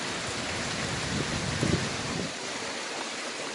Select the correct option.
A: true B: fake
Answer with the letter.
A